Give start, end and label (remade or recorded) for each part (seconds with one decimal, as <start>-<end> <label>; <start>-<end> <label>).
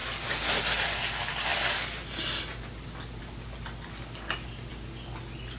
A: 0.0-5.6 recorded